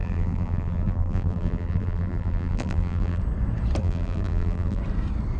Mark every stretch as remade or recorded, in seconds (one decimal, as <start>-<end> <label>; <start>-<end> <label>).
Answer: 0.0-3.2 remade; 3.2-3.8 recorded; 3.8-4.8 remade; 4.8-5.4 recorded